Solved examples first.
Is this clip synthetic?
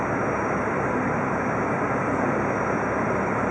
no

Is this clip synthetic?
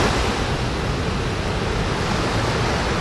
no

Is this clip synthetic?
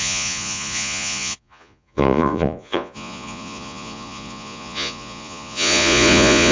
yes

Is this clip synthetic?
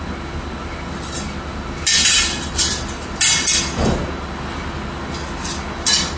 no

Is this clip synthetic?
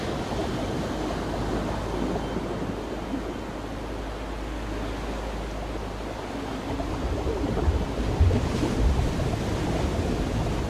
no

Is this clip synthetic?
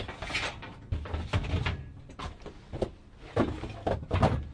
no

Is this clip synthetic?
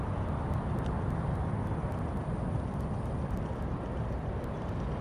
no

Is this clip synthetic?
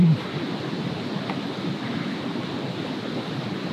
no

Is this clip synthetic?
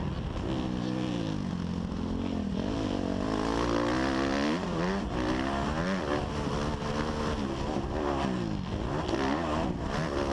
no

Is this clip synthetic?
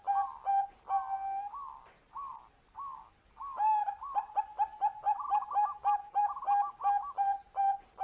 no